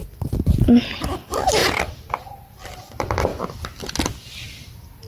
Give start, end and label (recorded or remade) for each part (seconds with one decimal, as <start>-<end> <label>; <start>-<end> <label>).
0.0-0.9 recorded; 0.9-1.6 remade; 1.6-2.1 recorded; 2.1-5.1 remade